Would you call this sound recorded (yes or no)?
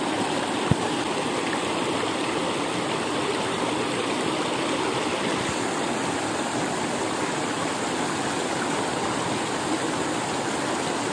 yes